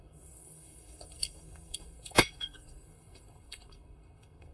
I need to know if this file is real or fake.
fake